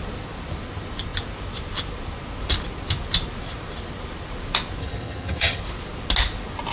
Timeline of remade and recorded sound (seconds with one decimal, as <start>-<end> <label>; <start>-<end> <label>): 0.0-4.8 recorded; 4.8-5.6 remade; 5.6-6.7 recorded